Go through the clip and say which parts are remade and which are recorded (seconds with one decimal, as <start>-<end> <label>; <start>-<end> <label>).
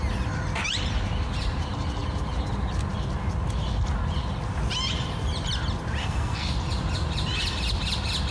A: 0.0-6.0 recorded; 6.0-6.5 remade; 6.5-8.3 recorded